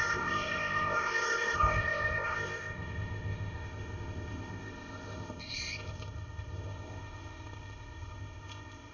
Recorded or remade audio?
remade